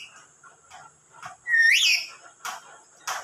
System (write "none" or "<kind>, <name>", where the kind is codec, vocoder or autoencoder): none